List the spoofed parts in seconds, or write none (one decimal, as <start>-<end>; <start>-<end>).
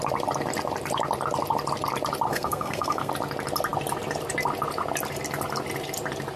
2.3-3.1